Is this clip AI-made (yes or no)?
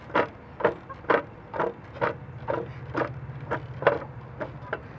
no